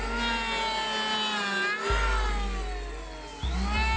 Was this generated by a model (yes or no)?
no